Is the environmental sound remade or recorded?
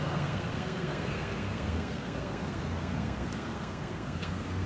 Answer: remade